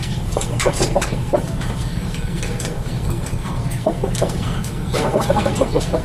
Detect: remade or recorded remade